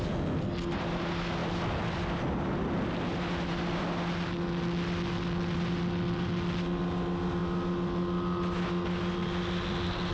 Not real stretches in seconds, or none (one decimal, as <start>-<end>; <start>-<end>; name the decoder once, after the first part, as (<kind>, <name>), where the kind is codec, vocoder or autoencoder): none